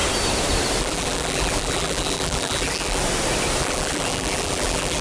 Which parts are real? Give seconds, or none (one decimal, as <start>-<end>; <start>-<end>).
0.0-0.8; 3.0-3.6